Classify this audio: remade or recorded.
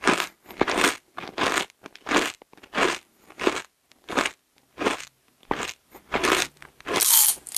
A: recorded